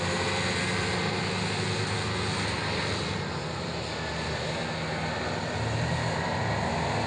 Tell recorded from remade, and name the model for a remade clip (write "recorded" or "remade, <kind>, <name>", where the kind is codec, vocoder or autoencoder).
recorded